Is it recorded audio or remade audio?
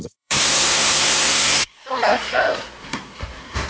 remade